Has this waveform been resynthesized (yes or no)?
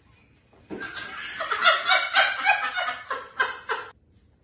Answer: no